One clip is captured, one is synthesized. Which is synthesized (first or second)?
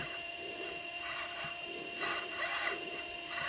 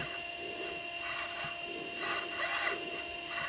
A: first